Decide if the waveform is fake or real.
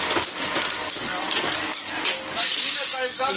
fake